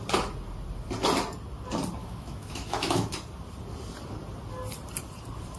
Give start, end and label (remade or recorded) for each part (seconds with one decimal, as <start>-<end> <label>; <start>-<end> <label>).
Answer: 0.0-2.0 recorded; 2.0-3.1 remade; 3.1-5.6 recorded